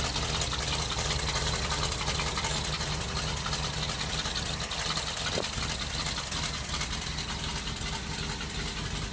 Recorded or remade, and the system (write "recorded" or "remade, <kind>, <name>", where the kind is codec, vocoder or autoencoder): recorded